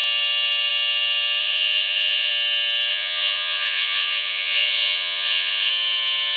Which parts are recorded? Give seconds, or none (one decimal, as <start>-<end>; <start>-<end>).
0.0-1.4; 2.3-2.9; 5.7-6.4